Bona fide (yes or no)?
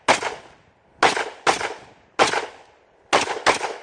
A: yes